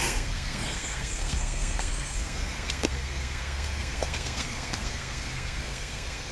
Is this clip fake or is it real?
fake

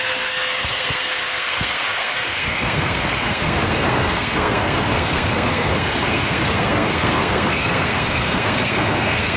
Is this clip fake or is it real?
fake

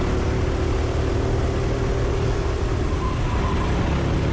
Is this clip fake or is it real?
real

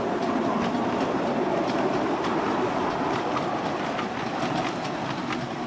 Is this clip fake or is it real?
real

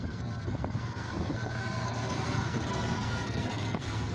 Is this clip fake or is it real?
fake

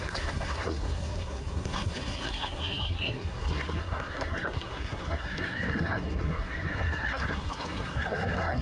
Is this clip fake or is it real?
fake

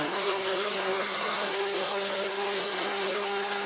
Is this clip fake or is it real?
fake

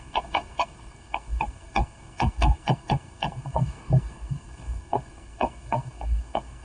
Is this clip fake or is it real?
fake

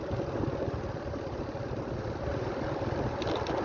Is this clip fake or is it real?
real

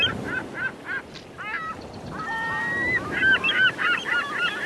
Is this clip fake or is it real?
real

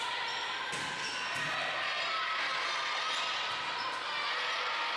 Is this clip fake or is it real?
real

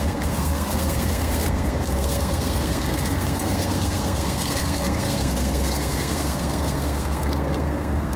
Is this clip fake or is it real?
fake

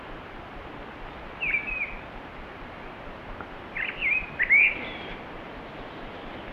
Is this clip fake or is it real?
real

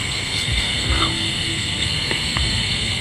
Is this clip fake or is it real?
fake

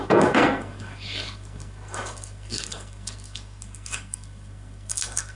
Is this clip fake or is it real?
fake